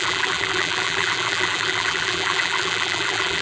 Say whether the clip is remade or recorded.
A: remade